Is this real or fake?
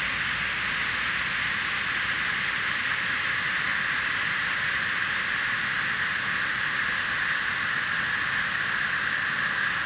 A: real